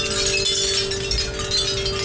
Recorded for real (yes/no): yes